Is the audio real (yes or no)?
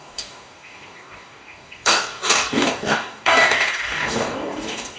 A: no